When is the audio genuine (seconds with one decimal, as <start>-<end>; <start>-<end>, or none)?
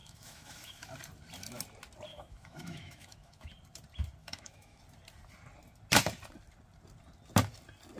0.9-2.1; 3.5-4.2; 4.8-8.0